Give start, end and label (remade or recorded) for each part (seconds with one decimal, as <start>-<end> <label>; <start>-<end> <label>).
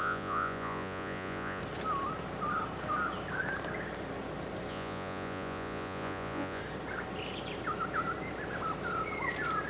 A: 0.0-1.6 remade; 1.6-4.7 recorded; 4.7-6.6 remade; 6.6-9.7 recorded